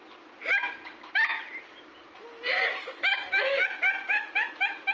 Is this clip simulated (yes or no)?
no